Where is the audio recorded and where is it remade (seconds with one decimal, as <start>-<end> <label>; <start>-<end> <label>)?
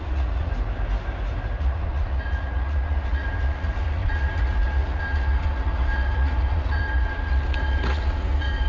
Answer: 0.0-0.5 remade; 0.5-1.6 recorded; 1.6-8.7 remade